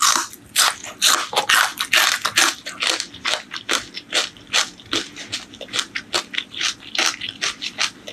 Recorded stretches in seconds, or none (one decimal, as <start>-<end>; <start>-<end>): 0.0-6.4; 6.9-8.1